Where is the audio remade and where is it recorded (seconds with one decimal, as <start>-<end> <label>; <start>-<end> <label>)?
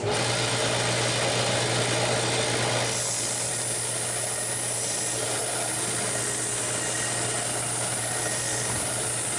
0.0-9.4 recorded